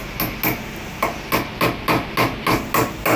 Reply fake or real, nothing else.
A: real